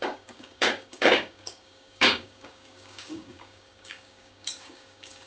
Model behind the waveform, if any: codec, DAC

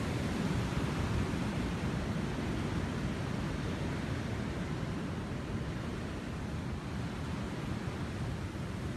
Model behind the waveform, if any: none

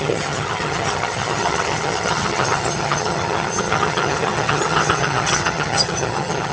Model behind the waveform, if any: vocoder, HiFi-GAN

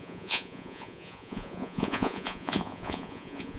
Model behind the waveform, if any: vocoder, Vocos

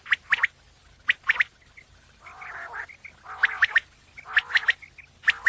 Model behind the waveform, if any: none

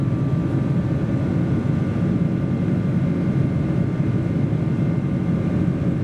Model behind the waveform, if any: none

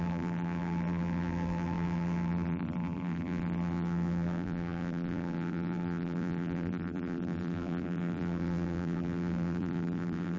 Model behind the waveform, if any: vocoder, BigVGAN v2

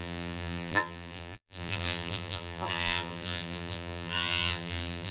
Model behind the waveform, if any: vocoder, BigVGAN v2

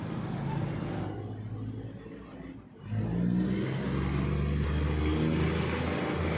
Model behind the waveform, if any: none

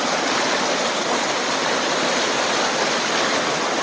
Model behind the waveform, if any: none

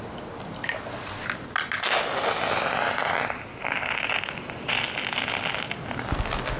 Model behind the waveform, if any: none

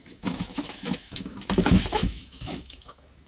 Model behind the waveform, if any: autoencoder, DAC-VAE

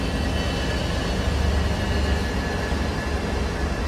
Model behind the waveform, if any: none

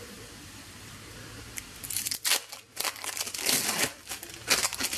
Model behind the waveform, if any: none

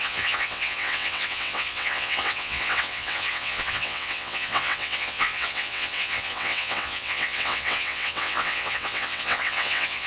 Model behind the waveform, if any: vocoder, WaveNeXt